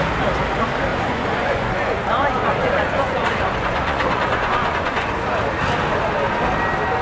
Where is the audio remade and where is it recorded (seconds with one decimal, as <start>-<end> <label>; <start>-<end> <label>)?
0.0-0.9 recorded; 0.9-5.1 remade; 5.1-7.0 recorded

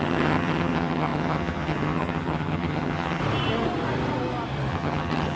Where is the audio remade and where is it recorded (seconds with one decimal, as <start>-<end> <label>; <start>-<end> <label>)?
0.0-3.2 remade; 3.2-4.7 recorded; 4.7-5.4 remade

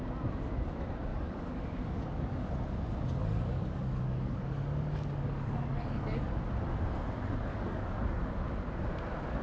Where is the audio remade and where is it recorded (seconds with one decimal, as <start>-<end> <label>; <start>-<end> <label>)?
0.0-1.1 recorded; 1.1-2.5 remade; 2.5-3.2 recorded; 3.2-6.3 remade; 6.3-7.5 recorded; 7.5-8.2 remade; 8.2-9.4 recorded

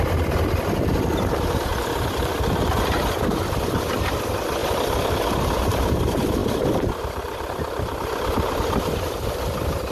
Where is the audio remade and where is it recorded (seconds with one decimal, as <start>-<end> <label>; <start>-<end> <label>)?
0.0-6.4 recorded; 6.4-9.3 remade; 9.3-9.9 recorded

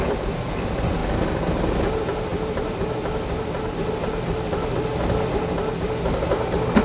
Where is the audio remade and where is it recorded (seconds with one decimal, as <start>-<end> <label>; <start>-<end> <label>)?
0.0-6.8 recorded

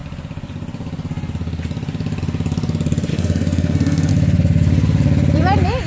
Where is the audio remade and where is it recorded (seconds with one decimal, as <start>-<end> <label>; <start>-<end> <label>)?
0.0-3.1 recorded; 3.1-4.1 remade; 4.1-5.9 recorded

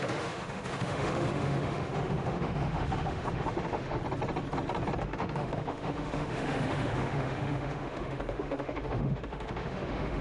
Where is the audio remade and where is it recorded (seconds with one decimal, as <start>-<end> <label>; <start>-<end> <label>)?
0.0-4.0 remade; 4.0-5.0 recorded; 5.0-10.2 remade